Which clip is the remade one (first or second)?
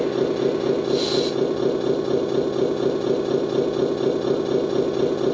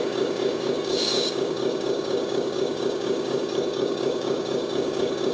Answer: second